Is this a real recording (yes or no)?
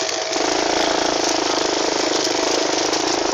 yes